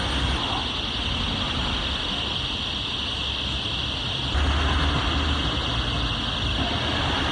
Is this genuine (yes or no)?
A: yes